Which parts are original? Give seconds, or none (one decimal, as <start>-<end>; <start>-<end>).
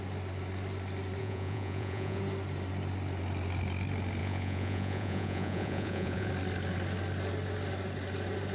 0.0-1.2; 2.2-4.2; 6.3-8.5